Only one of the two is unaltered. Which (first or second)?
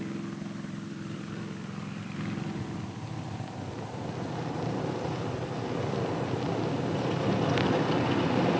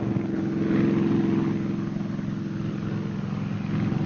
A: second